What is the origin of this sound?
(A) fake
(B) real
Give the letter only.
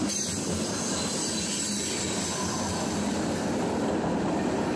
B